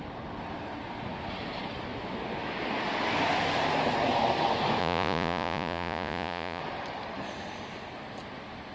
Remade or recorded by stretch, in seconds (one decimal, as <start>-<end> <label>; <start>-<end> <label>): 0.0-4.8 recorded; 4.8-6.6 remade; 6.6-8.7 recorded